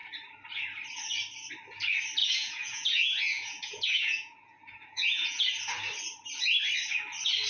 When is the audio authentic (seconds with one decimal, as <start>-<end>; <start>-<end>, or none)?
0.0-2.2; 5.5-7.5

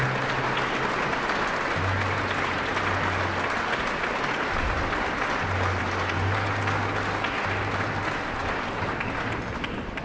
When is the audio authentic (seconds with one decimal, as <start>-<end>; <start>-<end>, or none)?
0.0-10.0